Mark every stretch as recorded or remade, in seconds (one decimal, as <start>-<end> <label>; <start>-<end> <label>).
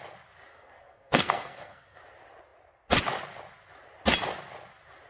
0.0-0.5 recorded; 0.5-2.0 remade; 2.0-5.1 recorded